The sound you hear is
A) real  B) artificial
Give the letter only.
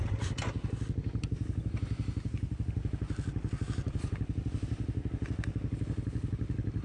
A